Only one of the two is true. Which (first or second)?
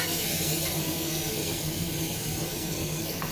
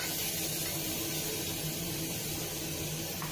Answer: second